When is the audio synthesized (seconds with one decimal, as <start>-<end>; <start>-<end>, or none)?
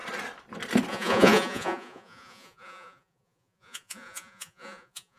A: 0.9-5.2